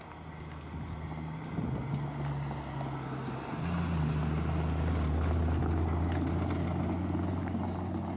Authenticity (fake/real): real